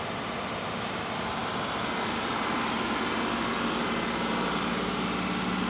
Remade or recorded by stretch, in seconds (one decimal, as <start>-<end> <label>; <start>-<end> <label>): 0.0-5.7 recorded